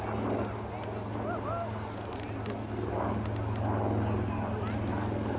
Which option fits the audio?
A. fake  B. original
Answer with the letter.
B